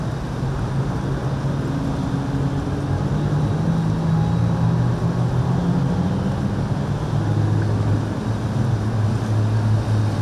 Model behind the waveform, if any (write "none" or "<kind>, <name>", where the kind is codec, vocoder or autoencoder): none